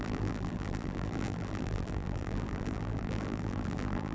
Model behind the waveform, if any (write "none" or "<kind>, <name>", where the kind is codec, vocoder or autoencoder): vocoder, BigVGAN v2